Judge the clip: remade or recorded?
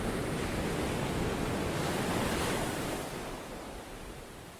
remade